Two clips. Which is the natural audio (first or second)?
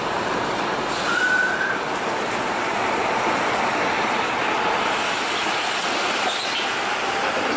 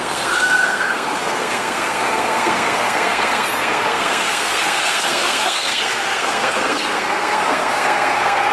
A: first